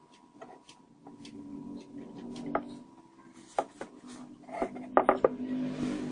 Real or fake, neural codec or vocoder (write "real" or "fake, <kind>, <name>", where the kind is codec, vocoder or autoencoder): real